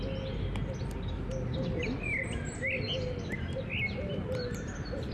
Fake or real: real